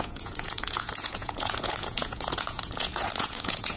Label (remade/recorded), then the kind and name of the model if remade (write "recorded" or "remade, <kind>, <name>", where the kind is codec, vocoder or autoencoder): remade, vocoder, Vocos